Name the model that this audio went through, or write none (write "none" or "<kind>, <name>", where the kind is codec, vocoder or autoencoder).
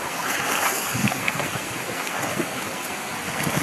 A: codec, SNAC